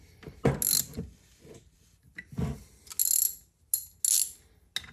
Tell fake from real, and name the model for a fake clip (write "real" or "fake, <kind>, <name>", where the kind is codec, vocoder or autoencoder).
real